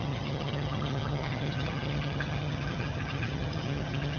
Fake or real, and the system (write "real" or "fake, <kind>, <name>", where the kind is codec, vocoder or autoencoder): fake, vocoder, HiFi-GAN